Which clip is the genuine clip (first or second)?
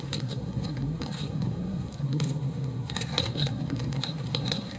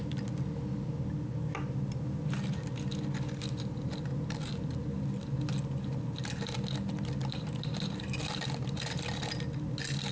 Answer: second